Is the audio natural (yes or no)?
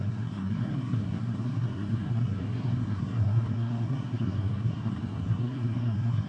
no